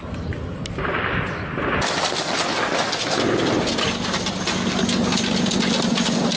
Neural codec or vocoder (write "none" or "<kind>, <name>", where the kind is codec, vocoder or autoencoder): none